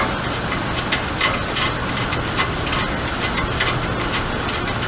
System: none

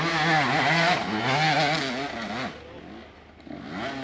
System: none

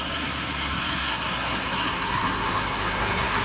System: codec, SNAC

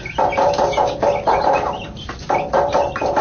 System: none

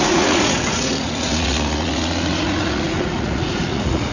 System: vocoder, Vocos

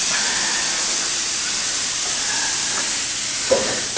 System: none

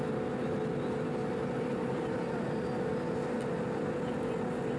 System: none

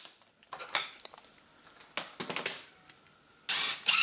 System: none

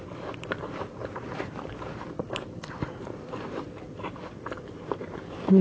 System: vocoder, BigVGAN v2